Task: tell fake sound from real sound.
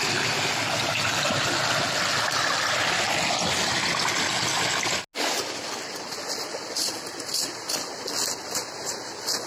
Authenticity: real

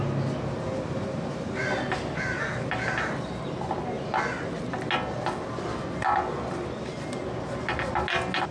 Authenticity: real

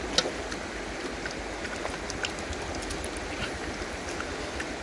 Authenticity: real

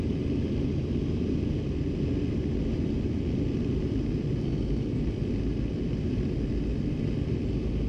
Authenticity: real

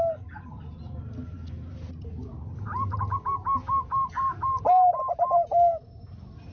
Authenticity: real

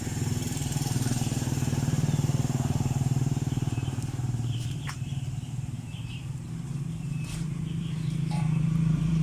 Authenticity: fake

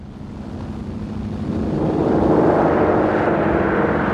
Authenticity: real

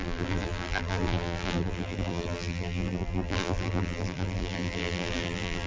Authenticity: fake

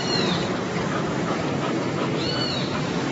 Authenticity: fake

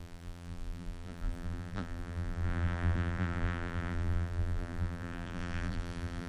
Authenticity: fake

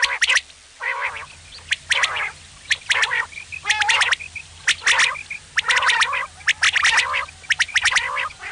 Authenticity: real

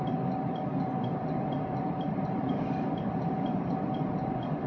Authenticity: fake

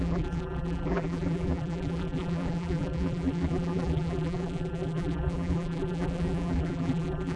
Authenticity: fake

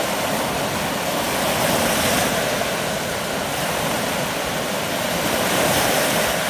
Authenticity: real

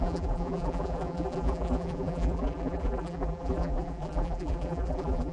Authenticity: fake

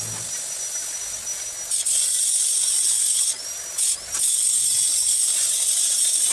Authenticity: real